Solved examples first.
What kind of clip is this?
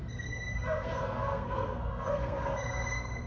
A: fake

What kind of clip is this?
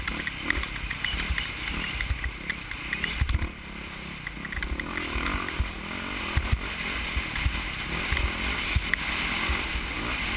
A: real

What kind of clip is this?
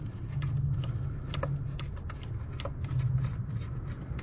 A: real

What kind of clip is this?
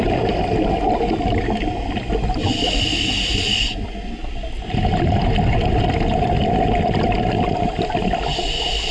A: real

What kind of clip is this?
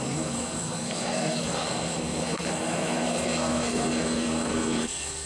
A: fake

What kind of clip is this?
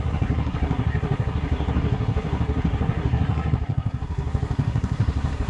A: fake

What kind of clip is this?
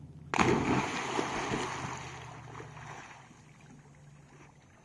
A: real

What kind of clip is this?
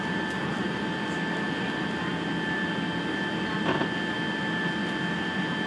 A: real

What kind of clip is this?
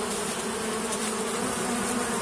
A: real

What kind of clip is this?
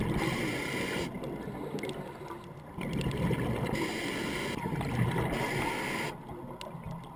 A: real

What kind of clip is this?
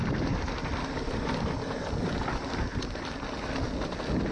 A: real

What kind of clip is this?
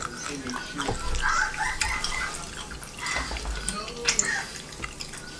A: real